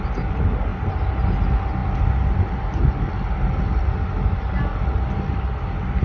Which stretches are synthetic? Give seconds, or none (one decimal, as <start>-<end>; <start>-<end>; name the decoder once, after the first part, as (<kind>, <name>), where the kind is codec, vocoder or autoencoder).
none